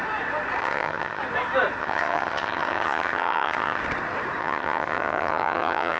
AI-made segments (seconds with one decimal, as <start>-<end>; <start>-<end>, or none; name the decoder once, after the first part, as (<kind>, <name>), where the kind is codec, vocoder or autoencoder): 0.6-1.2 (vocoder, HiFi-GAN); 1.8-3.8; 4.4-6.0